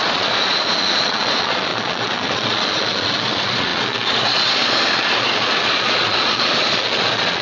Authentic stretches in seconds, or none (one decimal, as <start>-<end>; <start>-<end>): none